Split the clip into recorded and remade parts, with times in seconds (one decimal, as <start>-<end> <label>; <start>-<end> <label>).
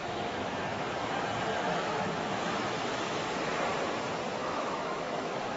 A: 0.0-1.1 remade; 1.1-1.5 recorded; 1.5-2.7 remade; 2.7-4.4 recorded; 4.4-5.6 remade